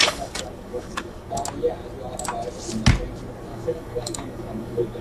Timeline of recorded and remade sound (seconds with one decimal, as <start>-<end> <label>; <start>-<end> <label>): 0.0-1.3 remade; 1.3-3.5 recorded; 3.5-5.0 remade